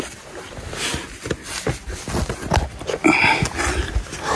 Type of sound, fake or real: real